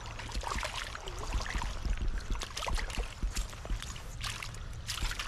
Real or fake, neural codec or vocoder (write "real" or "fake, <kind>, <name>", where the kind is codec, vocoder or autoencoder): real